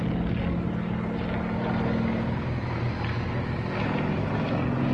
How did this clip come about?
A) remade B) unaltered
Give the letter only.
B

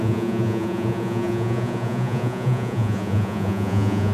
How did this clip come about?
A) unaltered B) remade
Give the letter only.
B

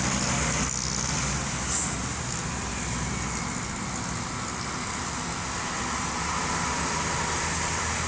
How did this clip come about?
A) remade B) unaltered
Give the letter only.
B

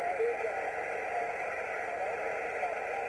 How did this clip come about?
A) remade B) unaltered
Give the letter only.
B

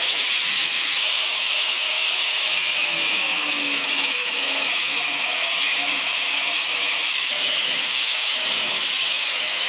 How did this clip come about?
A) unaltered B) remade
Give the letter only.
B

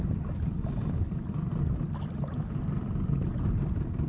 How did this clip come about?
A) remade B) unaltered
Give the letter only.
B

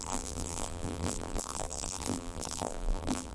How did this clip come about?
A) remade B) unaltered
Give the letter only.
A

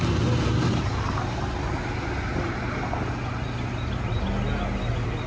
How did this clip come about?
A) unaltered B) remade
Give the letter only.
A